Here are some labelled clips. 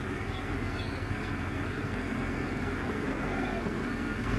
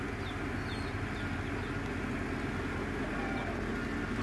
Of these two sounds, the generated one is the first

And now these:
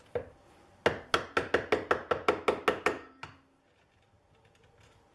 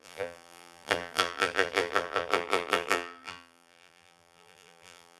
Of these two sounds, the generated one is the second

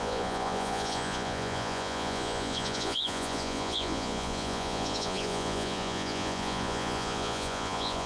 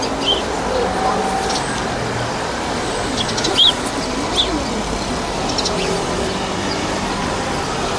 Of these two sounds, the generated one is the first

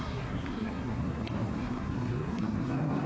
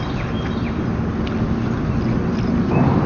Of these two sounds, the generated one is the first